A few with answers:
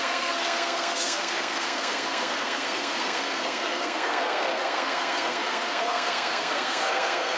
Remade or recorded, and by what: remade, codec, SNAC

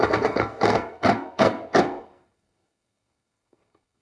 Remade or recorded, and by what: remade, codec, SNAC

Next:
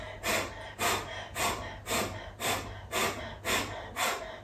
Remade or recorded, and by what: recorded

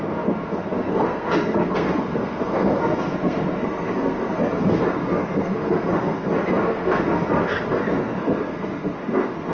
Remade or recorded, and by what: remade, codec, SNAC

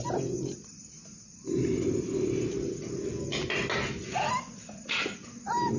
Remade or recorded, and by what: recorded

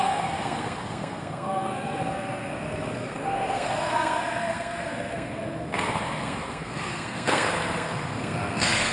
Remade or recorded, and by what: remade, codec, SNAC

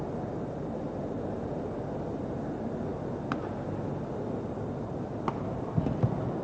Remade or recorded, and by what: recorded